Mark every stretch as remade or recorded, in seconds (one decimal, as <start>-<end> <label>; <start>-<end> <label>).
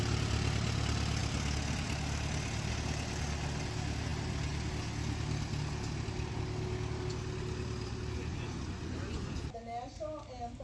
0.0-8.3 recorded; 8.3-9.4 remade; 9.4-10.6 recorded